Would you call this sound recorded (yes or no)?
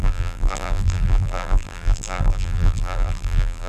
no